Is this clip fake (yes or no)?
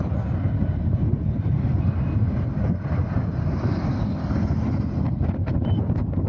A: no